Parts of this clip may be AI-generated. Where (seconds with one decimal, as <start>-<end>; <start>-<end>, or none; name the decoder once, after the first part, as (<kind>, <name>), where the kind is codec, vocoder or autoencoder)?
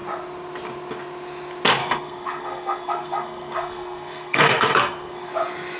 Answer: 1.8-5.3 (codec, SNAC)